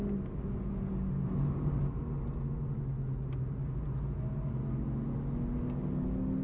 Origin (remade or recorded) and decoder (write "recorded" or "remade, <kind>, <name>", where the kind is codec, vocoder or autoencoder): recorded